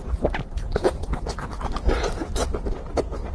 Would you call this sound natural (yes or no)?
yes